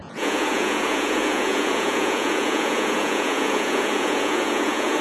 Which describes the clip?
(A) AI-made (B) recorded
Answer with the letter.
A